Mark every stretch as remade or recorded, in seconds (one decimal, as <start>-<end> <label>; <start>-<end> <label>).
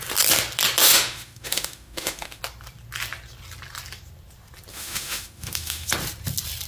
0.0-0.8 recorded; 0.8-2.4 remade; 2.4-4.7 recorded; 4.7-5.9 remade; 5.9-6.7 recorded